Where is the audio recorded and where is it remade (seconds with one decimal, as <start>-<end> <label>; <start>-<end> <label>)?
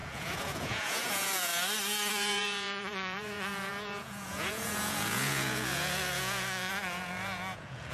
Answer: 0.0-1.5 remade; 1.5-2.1 recorded; 2.1-7.9 remade